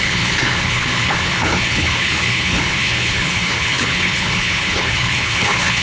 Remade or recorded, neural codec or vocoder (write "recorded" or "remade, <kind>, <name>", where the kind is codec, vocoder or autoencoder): remade, codec, HILCodec